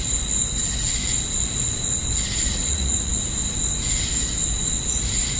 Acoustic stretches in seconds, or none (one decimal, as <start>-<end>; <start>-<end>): 0.0-2.5; 3.1-5.4